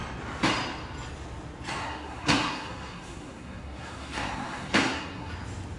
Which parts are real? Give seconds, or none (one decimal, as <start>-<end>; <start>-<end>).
0.0-1.8; 5.3-5.8